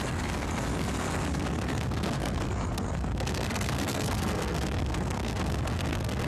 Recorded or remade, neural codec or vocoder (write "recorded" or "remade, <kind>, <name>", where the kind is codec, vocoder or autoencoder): remade, codec, SNAC